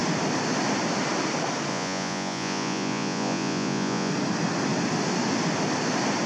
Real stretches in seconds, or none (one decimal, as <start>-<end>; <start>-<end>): 0.0-1.7; 4.1-6.3